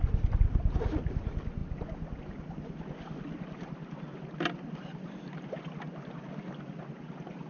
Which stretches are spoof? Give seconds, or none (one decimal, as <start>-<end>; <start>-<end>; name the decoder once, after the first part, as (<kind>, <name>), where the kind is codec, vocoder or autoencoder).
none